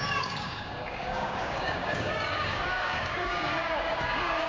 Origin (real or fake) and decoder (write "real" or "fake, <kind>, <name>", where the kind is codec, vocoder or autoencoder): fake, codec, DAC